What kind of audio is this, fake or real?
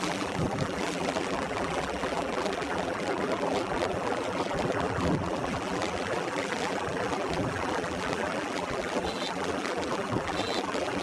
fake